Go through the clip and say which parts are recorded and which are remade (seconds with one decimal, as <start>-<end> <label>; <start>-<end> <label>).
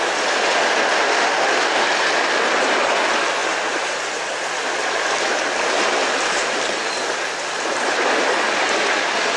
0.0-1.1 recorded; 1.1-1.8 remade; 1.8-9.4 recorded